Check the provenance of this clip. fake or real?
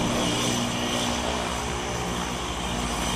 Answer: real